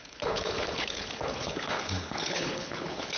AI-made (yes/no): yes